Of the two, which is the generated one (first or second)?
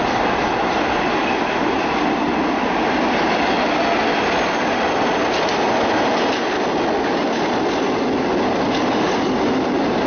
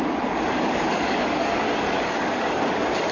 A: second